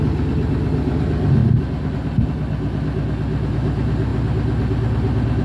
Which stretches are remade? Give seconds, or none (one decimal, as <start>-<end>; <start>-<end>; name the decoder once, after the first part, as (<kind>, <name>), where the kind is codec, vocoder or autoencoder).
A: none